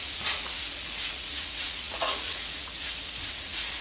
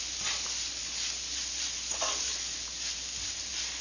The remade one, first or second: first